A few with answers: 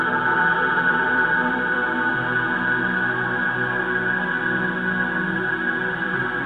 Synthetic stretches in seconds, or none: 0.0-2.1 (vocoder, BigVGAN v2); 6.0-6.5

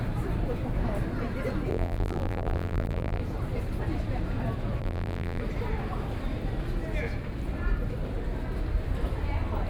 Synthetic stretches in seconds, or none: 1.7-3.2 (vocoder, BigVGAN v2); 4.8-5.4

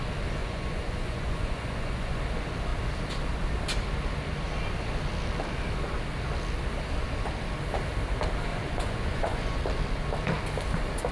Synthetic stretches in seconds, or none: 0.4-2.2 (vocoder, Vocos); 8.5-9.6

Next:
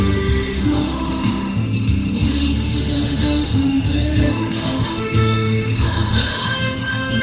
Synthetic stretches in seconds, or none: 0.0-7.2 (autoencoder, DAC-VAE)